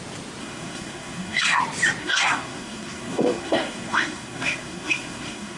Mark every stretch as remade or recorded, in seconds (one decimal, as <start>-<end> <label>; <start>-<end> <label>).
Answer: 0.0-0.4 recorded; 0.4-1.6 remade; 1.6-2.0 recorded; 2.0-5.6 remade